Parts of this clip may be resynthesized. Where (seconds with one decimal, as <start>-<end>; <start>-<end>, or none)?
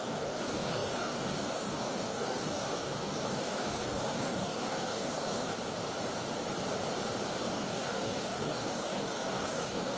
0.0-5.5; 7.4-10.0